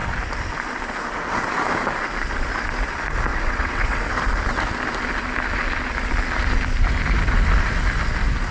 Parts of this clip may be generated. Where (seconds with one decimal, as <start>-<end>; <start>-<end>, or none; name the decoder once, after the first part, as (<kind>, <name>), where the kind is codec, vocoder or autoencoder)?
3.3-4.0 (vocoder, WaveNeXt)